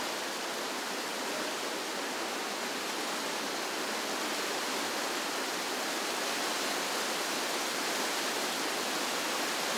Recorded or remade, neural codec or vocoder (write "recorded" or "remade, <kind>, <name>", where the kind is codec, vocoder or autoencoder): recorded